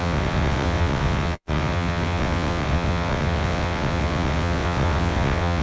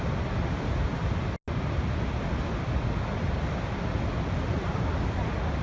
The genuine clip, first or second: second